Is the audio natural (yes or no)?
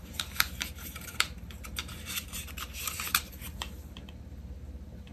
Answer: no